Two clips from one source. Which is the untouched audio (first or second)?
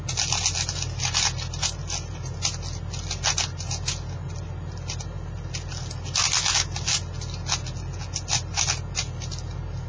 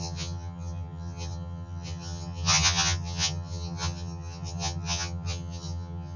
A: first